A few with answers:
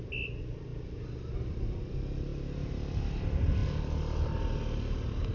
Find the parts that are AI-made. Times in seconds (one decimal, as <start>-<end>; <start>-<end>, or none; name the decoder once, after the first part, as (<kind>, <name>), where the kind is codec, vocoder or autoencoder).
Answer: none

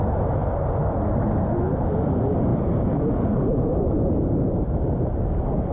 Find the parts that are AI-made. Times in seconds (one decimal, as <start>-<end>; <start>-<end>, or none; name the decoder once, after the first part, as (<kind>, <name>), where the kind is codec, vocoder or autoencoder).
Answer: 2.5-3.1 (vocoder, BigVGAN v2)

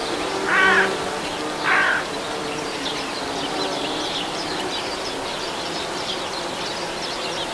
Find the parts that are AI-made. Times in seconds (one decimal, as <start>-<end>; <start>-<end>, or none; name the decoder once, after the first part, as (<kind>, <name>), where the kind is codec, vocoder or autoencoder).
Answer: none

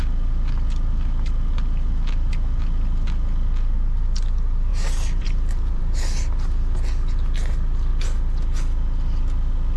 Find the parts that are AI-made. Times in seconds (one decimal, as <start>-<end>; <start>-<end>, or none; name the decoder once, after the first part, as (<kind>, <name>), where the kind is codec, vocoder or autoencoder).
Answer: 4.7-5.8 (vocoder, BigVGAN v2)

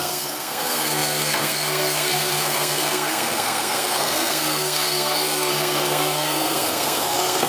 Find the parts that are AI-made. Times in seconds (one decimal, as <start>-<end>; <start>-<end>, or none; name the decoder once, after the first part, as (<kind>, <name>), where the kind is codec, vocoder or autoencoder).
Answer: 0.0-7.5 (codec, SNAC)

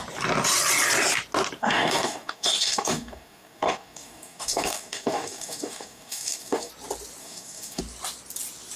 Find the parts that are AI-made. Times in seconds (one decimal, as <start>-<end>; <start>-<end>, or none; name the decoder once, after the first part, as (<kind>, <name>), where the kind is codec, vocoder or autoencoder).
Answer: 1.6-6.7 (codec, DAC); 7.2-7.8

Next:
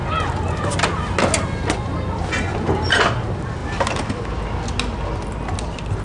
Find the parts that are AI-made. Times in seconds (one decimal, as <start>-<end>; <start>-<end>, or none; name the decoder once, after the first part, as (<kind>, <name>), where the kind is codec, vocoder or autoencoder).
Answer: none

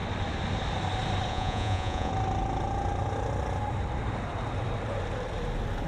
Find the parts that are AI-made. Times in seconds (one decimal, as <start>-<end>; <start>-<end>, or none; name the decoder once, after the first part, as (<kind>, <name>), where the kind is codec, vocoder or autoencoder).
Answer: 1.3-2.1 (vocoder, Vocos)